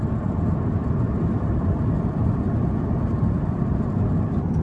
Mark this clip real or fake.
fake